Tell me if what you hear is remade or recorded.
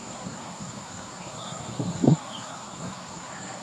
remade